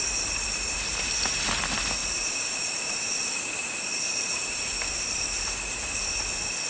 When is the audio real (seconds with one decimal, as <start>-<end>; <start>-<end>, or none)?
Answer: 0.0-2.0; 6.0-6.7